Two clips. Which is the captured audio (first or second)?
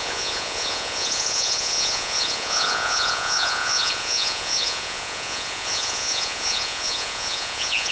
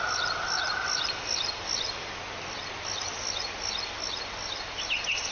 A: second